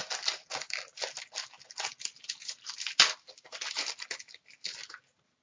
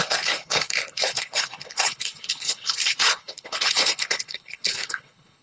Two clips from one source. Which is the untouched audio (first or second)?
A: first